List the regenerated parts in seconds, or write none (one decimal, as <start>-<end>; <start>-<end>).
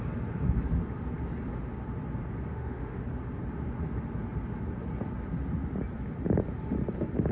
2.5-3.0